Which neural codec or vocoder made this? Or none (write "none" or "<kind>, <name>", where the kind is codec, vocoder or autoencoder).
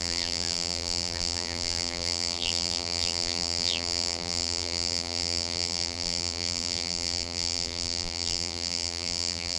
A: vocoder, BigVGAN v2